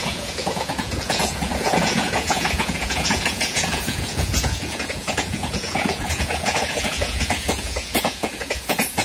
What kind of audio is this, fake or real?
fake